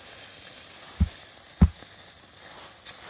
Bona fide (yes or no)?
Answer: yes